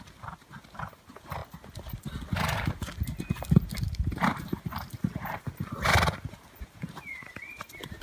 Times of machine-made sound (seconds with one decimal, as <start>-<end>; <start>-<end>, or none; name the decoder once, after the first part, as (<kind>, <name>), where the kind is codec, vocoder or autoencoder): 0.0-1.4 (vocoder, BigVGAN v2); 3.8-8.0